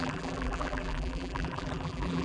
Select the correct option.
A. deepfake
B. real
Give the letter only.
A